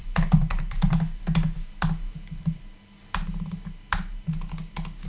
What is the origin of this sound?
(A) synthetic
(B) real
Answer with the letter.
B